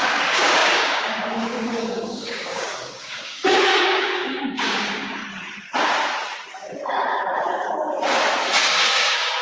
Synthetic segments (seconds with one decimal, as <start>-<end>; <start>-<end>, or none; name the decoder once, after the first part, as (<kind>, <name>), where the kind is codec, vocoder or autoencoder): 0.0-5.2 (codec, DAC); 8.6-9.4